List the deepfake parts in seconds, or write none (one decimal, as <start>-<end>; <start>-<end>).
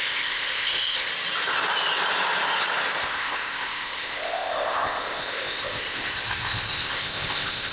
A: 0.0-1.1; 3.0-7.7